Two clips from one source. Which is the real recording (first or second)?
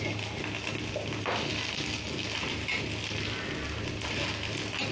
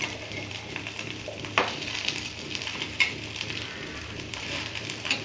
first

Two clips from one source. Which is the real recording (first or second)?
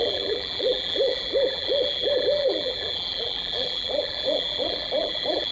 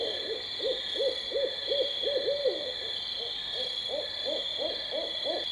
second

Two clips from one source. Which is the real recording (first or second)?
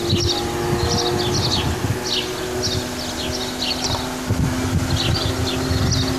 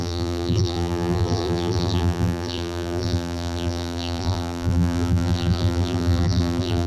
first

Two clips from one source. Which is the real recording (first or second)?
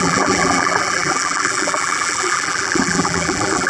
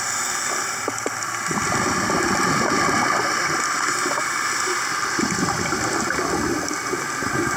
second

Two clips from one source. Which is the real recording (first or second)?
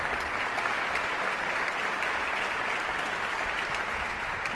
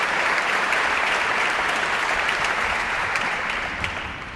first